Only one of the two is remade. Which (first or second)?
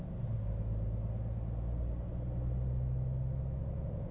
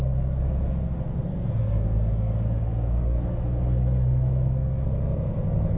second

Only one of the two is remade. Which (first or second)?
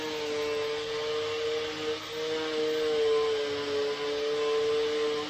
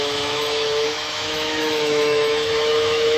second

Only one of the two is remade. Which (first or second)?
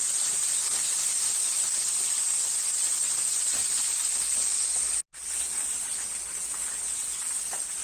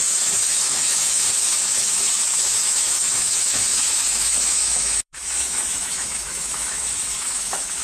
second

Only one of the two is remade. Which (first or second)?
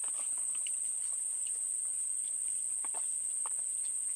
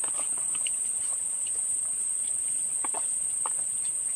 second